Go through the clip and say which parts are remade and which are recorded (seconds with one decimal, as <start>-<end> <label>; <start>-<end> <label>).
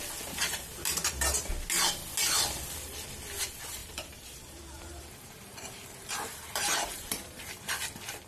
0.0-3.8 recorded; 3.8-7.7 remade; 7.7-8.3 recorded